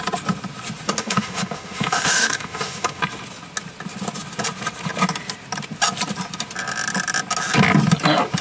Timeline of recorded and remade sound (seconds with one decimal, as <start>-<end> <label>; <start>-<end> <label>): 0.0-1.0 recorded; 1.0-3.0 remade; 3.0-8.4 recorded